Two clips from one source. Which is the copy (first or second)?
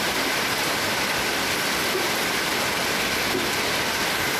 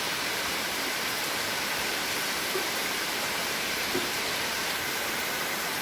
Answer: second